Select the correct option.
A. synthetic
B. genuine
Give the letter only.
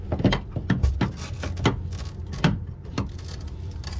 B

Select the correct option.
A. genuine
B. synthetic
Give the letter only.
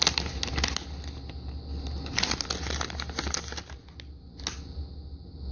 A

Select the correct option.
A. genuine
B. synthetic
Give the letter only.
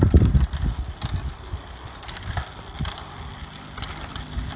A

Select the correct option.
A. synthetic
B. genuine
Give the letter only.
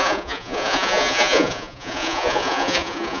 A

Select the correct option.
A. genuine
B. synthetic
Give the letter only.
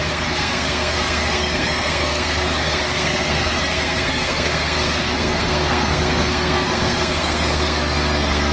B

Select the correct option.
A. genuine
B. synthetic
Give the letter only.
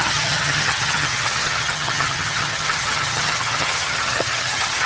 B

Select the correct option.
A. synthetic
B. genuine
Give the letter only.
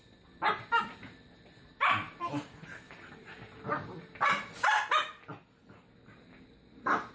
B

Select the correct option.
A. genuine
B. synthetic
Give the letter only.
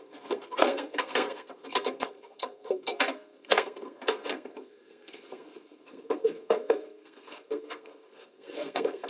B